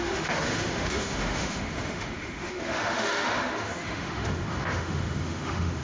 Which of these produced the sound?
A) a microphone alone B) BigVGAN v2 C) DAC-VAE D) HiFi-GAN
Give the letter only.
C